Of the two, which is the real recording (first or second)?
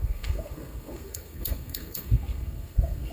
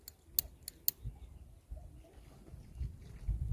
second